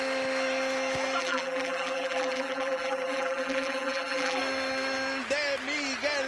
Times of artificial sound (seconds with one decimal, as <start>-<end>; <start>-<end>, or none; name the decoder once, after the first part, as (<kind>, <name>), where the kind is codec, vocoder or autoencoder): 1.2-4.4 (vocoder, BigVGAN v2)